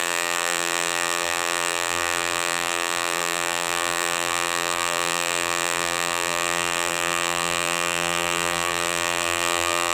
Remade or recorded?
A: remade